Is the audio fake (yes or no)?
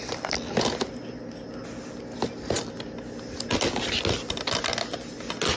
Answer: no